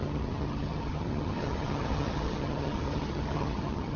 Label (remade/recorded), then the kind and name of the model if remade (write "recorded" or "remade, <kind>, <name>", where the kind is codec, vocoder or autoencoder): remade, vocoder, HiFi-GAN